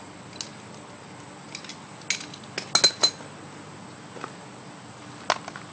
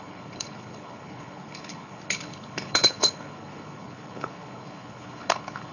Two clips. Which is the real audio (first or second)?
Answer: first